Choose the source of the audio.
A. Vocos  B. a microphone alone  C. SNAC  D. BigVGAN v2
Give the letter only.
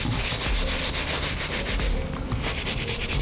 B